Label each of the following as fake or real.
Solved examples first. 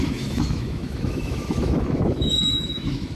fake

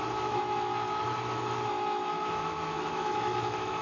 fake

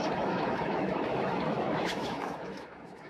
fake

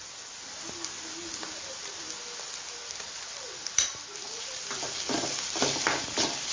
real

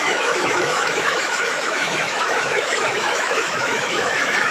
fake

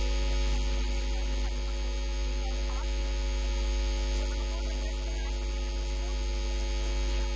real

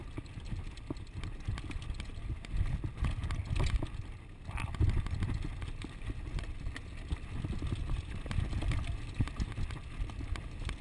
real